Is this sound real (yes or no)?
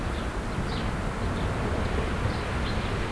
yes